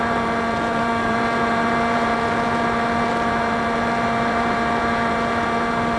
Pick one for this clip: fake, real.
fake